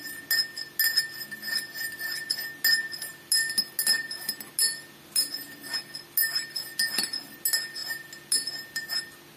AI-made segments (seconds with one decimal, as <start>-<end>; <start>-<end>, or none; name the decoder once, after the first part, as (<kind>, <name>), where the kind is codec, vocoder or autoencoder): none